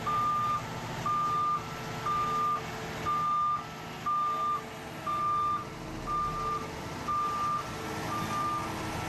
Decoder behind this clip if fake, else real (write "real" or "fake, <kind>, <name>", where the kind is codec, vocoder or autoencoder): real